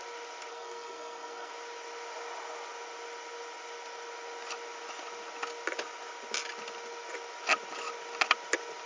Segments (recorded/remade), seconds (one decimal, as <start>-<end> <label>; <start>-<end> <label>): 0.0-0.5 recorded; 0.5-1.5 remade; 1.5-8.9 recorded